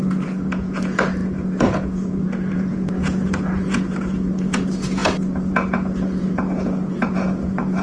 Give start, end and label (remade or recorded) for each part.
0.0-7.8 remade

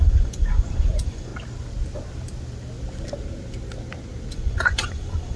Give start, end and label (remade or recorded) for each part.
0.0-1.3 remade; 1.3-4.3 recorded; 4.3-5.4 remade

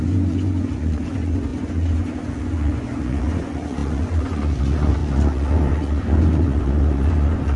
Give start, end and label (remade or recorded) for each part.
0.0-7.6 remade